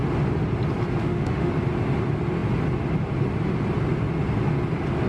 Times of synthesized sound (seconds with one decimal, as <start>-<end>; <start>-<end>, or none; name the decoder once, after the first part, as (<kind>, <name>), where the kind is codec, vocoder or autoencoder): 1.0-1.5 (autoencoder, DAC-VAE)